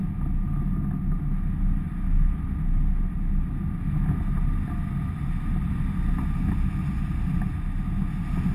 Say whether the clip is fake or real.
real